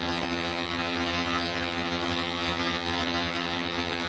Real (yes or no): no